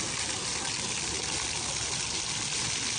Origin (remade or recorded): recorded